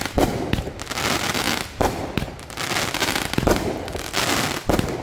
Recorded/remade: recorded